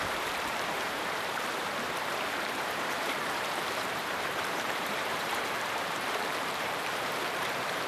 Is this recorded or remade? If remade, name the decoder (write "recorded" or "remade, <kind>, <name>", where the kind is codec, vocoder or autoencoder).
remade, vocoder, BigVGAN v2